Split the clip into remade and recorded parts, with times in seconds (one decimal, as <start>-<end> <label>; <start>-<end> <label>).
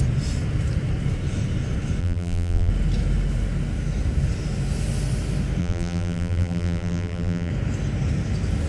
0.0-2.0 recorded; 2.0-2.7 remade; 2.7-5.6 recorded; 5.6-7.5 remade; 7.5-8.7 recorded